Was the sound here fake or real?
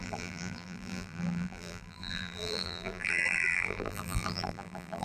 fake